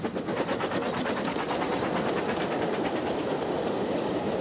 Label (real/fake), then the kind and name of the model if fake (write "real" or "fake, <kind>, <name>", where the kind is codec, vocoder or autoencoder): real